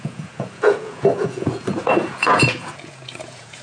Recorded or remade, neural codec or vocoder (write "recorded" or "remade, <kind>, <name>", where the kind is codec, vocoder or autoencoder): remade, vocoder, Vocos